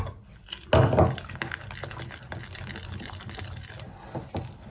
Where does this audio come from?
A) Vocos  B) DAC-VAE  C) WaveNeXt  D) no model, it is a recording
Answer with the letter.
D